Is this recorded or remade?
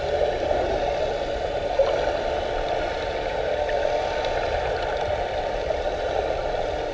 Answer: recorded